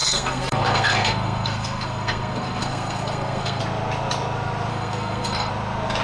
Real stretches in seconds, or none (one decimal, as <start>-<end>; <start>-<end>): 3.6-4.7; 5.5-6.0